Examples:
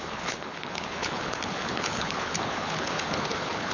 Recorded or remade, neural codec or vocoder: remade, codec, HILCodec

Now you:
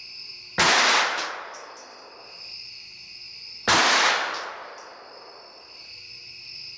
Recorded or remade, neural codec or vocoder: recorded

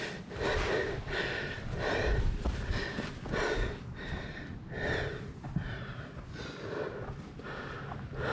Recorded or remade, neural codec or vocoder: recorded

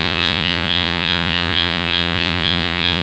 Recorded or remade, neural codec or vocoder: remade, vocoder, Vocos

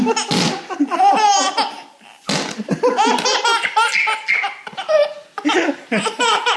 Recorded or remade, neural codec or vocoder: recorded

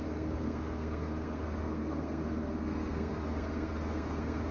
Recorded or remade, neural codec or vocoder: remade, codec, SNAC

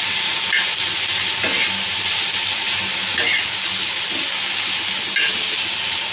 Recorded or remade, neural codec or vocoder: recorded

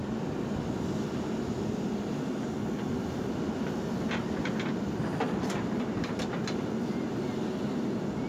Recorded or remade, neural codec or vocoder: recorded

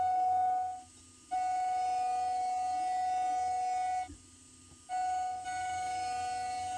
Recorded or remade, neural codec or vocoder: recorded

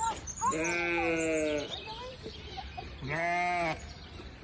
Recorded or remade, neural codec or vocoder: recorded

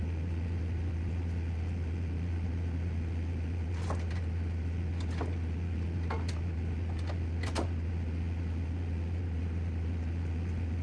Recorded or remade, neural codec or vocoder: recorded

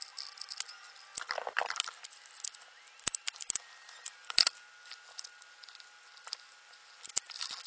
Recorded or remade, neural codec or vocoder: recorded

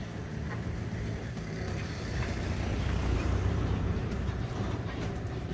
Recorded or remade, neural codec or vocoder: remade, vocoder, BigVGAN v2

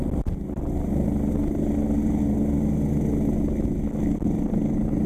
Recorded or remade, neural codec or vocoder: recorded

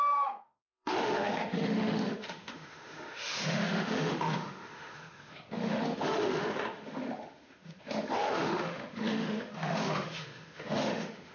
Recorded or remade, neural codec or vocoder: remade, autoencoder, DAC-VAE